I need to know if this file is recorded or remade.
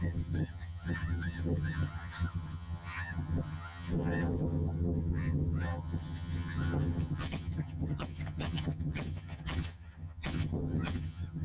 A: remade